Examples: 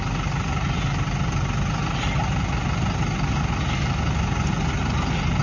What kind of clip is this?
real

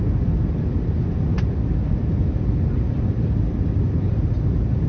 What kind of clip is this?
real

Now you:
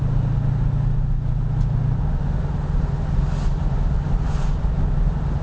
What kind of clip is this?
real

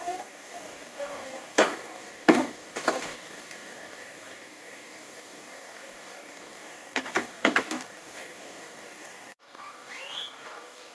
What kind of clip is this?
fake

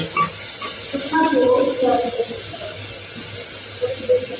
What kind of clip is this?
real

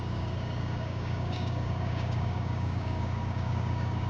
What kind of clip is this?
fake